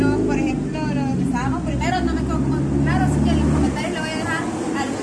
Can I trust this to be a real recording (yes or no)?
yes